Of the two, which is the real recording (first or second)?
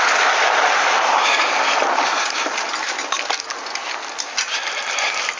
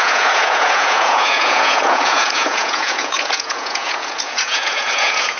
first